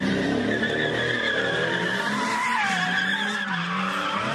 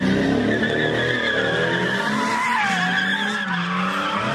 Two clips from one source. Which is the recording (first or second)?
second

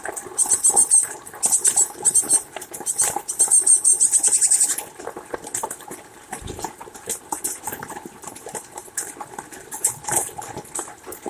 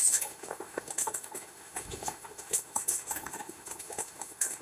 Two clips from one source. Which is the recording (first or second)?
first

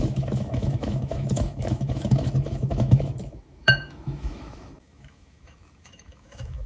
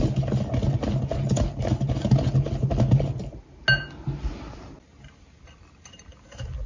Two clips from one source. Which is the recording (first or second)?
second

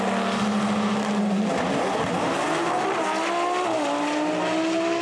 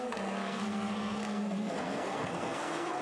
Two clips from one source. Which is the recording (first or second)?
first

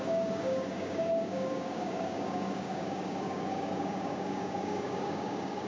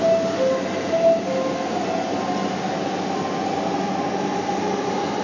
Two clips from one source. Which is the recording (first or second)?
second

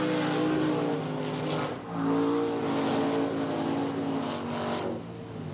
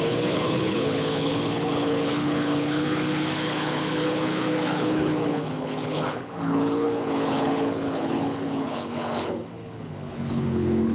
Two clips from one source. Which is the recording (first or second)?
first